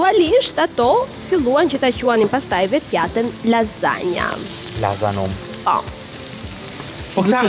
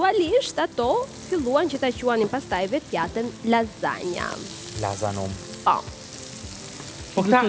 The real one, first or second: second